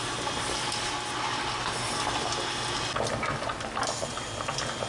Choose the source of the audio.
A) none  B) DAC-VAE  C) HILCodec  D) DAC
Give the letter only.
A